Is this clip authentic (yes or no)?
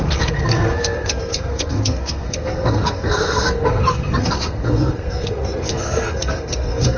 no